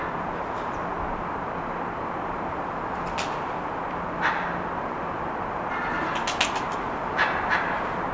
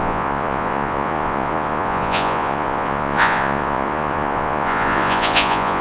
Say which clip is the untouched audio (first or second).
first